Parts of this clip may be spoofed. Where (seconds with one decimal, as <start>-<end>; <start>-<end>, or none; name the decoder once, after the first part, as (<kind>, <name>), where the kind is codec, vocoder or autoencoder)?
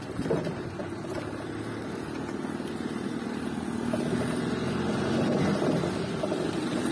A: none